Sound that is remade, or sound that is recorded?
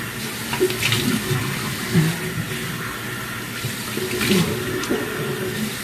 recorded